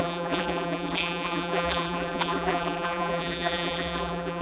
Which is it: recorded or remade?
remade